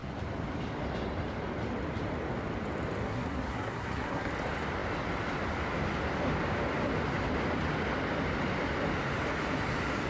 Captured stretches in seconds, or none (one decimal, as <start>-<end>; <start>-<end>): 0.0-3.0; 4.3-10.1

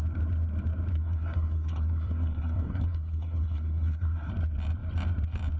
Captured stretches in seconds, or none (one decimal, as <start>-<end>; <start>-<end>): 0.0-0.9; 4.3-5.6

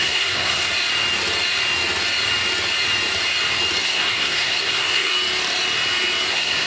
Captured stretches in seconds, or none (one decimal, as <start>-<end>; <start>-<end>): 0.7-3.8; 5.1-6.3

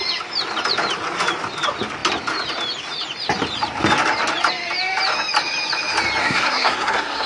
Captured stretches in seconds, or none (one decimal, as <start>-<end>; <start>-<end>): 0.0-6.2

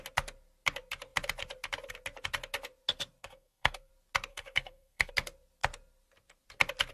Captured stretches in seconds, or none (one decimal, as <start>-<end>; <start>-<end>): 0.0-3.2; 3.9-4.3; 5.1-6.9

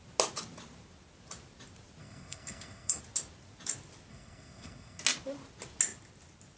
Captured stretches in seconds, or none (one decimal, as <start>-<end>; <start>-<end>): 0.0-2.0; 3.0-4.1; 5.0-6.6

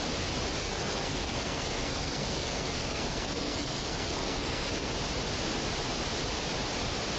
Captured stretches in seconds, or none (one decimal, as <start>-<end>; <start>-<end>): 0.0-0.6; 4.9-7.2